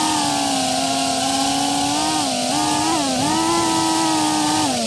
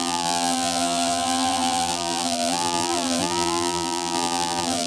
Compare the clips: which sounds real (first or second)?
first